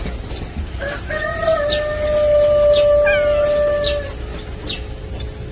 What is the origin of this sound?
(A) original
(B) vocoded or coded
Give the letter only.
A